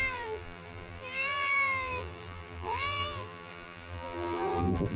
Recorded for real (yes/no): no